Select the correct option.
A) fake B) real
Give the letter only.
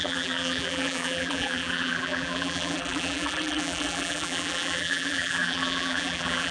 A